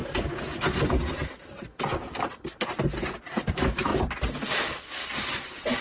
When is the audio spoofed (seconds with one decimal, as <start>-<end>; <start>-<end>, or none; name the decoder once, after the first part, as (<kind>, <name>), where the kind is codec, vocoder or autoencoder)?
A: 3.5-3.9 (autoencoder, DAC-VAE); 4.5-5.0